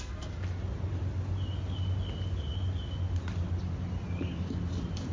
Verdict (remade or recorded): recorded